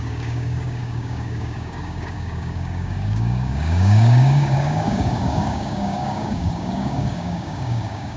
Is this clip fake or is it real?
fake